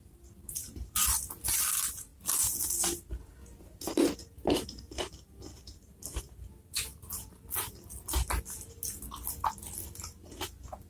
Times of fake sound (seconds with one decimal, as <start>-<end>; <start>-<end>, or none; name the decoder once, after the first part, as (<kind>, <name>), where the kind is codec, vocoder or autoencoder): none